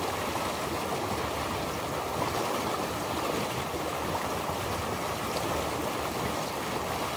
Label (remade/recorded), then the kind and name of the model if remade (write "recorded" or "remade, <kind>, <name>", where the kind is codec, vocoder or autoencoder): recorded